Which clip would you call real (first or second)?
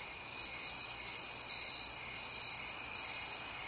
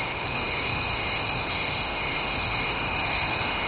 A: first